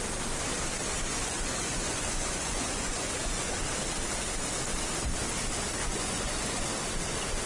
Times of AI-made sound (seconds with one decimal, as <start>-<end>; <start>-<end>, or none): 1.1-3.5; 5.8-6.6